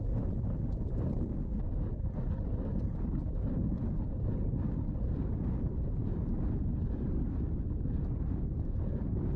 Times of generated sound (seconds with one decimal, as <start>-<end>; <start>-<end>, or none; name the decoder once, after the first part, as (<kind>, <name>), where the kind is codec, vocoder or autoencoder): none